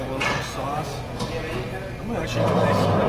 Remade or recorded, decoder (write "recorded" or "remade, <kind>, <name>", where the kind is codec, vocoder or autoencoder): recorded